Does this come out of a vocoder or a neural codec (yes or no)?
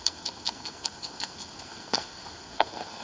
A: yes